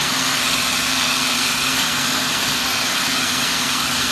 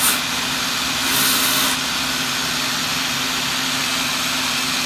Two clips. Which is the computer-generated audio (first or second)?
first